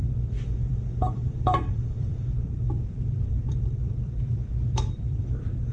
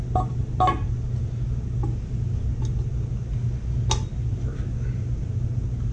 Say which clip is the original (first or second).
second